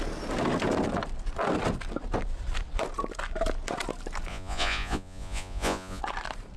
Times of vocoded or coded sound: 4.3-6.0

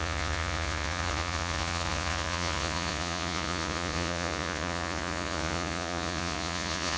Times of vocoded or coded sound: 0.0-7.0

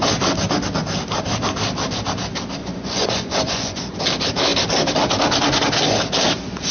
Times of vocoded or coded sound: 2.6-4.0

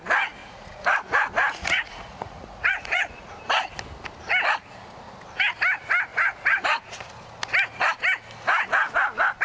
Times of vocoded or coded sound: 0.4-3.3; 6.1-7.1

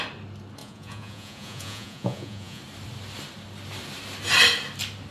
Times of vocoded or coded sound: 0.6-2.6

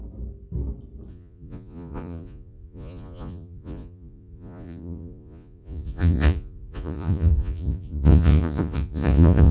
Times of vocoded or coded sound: 1.1-9.5

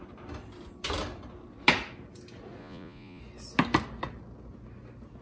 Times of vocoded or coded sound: 2.6-3.2